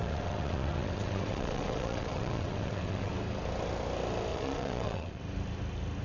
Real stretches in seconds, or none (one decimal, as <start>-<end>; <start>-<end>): 3.1-4.3; 5.2-6.0